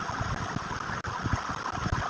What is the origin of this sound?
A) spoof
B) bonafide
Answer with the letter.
B